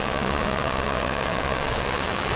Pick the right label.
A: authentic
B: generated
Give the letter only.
B